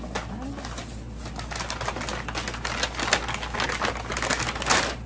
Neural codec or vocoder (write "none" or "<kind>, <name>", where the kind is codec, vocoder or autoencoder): none